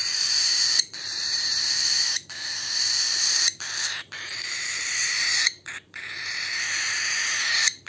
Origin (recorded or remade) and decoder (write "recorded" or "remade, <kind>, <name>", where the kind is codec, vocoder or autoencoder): remade, vocoder, BigVGAN v2